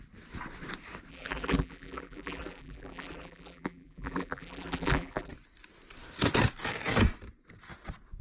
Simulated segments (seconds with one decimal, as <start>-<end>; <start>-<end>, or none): 1.1-5.3